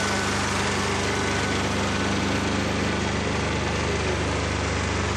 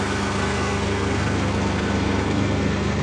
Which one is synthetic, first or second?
second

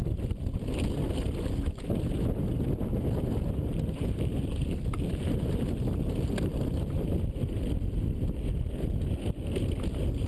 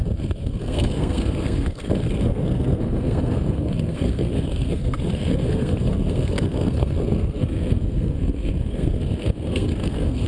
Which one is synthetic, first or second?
second